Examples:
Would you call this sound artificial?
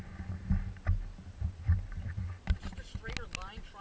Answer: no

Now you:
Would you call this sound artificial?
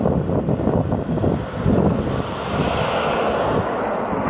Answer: no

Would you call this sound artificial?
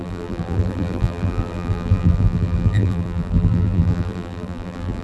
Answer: yes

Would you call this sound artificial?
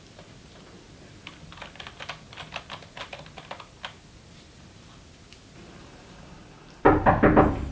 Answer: no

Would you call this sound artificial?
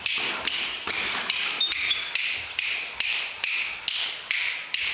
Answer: no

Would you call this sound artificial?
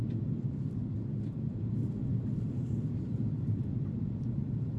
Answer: yes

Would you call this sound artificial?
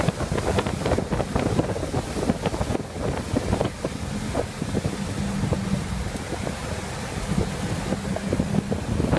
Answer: no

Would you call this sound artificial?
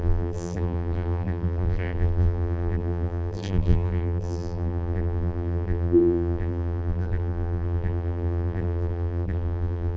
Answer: yes